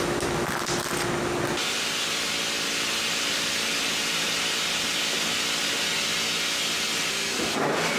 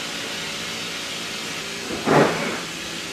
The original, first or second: first